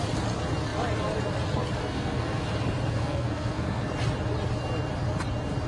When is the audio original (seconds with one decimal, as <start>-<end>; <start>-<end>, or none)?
0.0-1.8; 2.4-2.9; 3.9-5.7

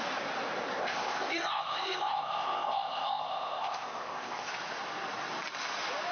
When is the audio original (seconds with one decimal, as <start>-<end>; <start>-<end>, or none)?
0.0-0.8; 4.5-6.1

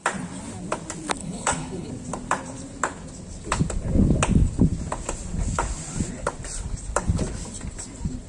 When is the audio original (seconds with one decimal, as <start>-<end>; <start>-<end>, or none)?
0.0-1.2; 1.9-8.3

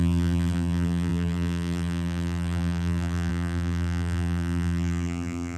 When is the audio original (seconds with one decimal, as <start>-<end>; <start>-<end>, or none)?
none

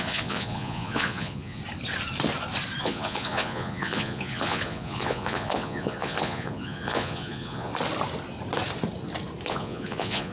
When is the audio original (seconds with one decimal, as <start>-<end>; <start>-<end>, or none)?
1.6-2.8; 7.7-9.5